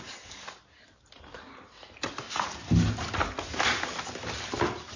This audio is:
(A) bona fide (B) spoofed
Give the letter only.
A